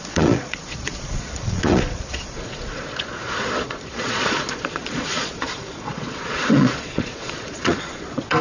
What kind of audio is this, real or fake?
fake